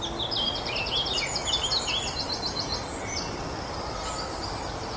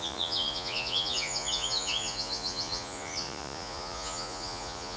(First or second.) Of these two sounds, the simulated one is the second